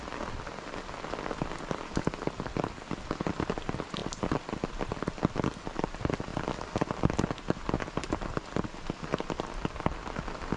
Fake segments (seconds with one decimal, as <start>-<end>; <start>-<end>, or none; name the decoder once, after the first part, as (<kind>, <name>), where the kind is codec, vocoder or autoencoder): none